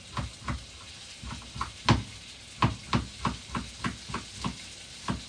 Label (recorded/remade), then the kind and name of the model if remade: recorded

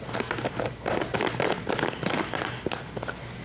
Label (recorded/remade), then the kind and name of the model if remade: recorded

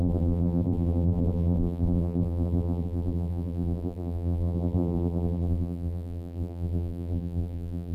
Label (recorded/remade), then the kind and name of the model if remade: remade, vocoder, BigVGAN v2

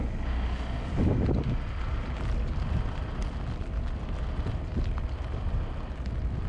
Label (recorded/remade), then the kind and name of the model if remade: recorded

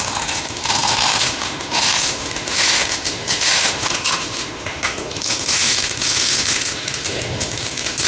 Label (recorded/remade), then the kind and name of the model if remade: remade, autoencoder, DAC-VAE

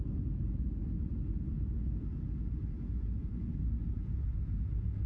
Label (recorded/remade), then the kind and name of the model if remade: remade, vocoder, Vocos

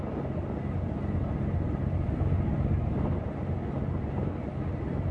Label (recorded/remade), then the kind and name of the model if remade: recorded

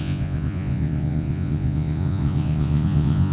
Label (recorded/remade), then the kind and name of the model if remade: remade, vocoder, Vocos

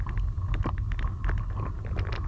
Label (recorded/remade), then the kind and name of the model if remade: recorded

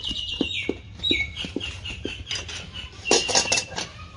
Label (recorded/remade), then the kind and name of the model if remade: remade, vocoder, BigVGAN v2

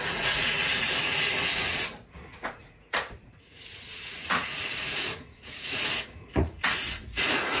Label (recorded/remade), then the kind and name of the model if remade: remade, vocoder, Vocos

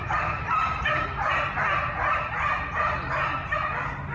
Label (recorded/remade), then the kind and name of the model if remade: recorded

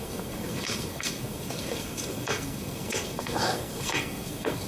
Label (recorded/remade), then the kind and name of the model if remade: remade, codec, SNAC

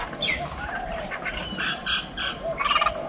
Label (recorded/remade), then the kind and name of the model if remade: recorded